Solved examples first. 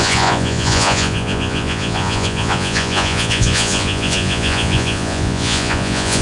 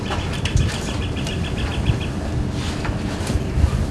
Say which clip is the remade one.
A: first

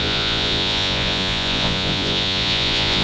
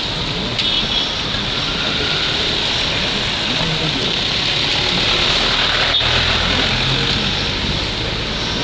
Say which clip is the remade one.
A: first